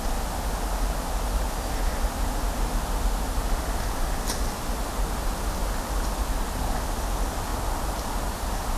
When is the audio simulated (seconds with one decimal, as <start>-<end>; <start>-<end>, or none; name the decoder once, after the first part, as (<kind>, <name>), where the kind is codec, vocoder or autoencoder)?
none